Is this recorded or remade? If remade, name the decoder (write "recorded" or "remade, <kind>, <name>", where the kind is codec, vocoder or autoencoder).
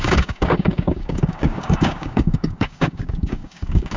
remade, codec, DAC